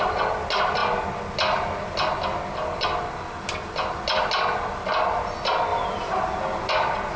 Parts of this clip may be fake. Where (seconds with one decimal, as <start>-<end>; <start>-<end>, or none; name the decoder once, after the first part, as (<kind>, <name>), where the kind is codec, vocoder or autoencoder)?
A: none